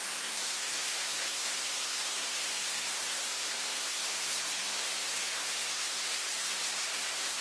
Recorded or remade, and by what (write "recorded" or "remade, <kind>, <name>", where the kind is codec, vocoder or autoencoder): remade, codec, SNAC